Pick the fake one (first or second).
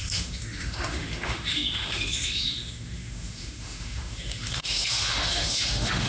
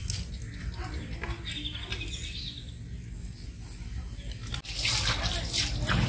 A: first